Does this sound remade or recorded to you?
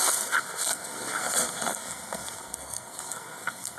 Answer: remade